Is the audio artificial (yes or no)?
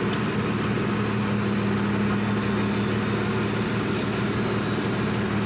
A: no